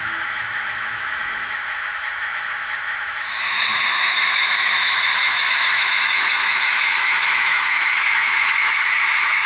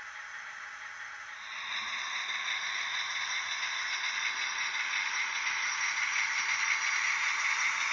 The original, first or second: second